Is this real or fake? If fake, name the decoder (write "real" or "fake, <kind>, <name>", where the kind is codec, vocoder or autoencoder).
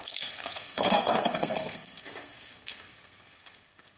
fake, codec, SNAC